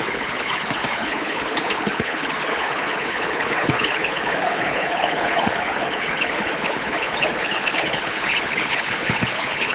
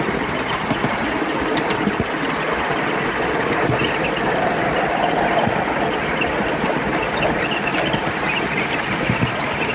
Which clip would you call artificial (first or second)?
first